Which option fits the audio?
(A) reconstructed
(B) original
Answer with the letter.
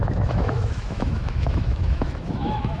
A